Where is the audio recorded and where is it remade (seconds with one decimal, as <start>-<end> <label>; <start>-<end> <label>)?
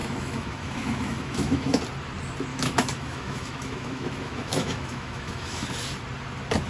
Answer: 0.0-1.8 remade; 1.8-2.5 recorded; 2.5-5.7 remade; 5.7-6.7 recorded